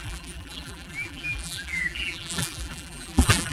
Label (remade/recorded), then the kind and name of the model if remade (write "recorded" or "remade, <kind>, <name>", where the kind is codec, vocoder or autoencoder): remade, vocoder, BigVGAN v2